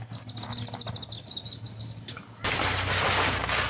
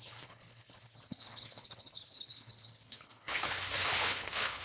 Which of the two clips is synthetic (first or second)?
second